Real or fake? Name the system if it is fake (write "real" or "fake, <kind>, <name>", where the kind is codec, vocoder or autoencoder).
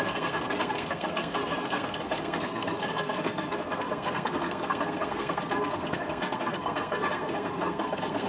fake, codec, SNAC